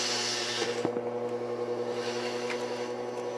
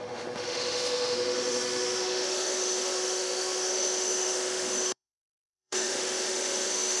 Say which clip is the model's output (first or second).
second